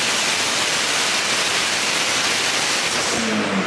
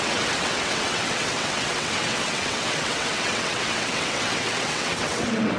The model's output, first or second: second